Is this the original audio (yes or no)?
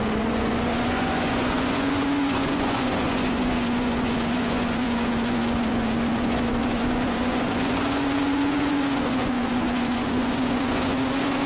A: no